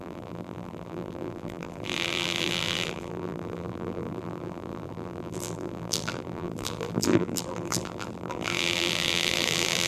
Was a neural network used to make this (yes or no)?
yes